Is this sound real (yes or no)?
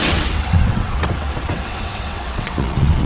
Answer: no